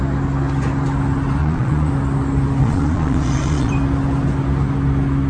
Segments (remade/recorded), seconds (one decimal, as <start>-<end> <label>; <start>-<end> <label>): 0.0-1.4 recorded; 1.4-1.9 remade; 1.9-2.6 recorded; 2.6-3.7 remade; 3.7-5.3 recorded